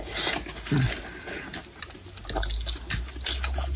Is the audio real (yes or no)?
yes